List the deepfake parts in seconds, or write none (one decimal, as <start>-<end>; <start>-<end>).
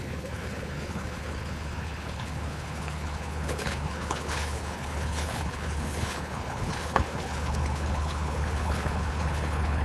0.0-9.8